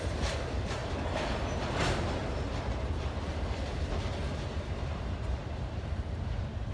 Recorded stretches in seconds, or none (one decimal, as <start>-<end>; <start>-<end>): 0.8-1.4; 2.2-4.3; 5.4-5.9